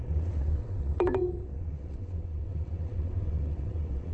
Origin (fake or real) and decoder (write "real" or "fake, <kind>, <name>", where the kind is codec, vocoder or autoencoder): fake, vocoder, WaveNeXt